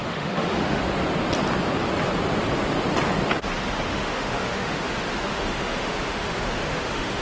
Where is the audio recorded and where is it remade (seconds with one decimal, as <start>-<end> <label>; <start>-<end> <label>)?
0.0-0.8 remade; 0.8-3.9 recorded; 3.9-7.2 remade